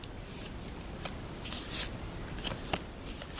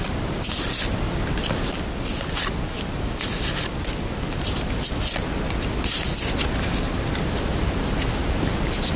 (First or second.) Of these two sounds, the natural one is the second